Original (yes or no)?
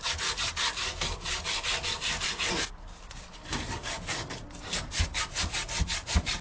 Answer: no